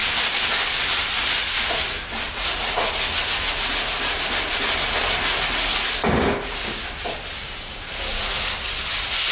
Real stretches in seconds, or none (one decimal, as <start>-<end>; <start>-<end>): 0.0-9.3